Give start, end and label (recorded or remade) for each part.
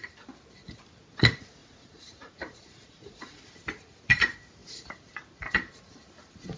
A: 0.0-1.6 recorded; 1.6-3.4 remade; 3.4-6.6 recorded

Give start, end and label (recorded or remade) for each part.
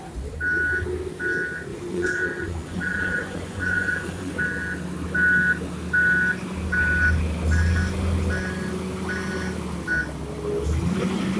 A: 0.0-1.7 recorded; 1.7-4.4 remade; 4.4-11.4 recorded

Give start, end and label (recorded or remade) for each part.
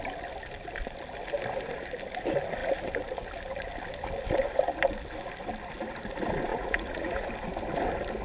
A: 0.0-6.5 recorded; 6.5-7.3 remade; 7.3-8.2 recorded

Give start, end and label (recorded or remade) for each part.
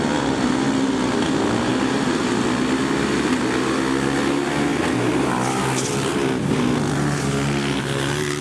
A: 0.0-8.4 recorded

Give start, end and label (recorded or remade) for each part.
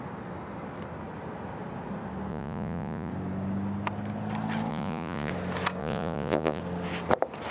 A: 0.0-2.3 recorded; 2.3-3.1 remade; 3.1-4.7 recorded; 4.7-5.3 remade; 5.3-5.8 recorded; 5.8-6.6 remade; 6.6-7.5 recorded